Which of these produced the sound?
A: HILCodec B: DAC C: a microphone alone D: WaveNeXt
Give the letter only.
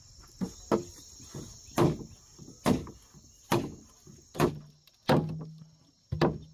C